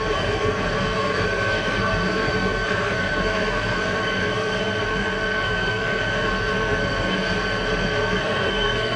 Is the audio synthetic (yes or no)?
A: yes